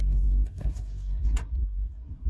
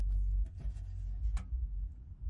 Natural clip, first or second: second